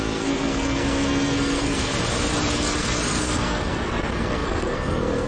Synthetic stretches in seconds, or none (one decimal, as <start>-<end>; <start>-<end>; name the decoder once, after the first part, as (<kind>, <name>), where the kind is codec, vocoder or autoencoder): 0.0-1.9 (codec, SNAC); 2.5-5.3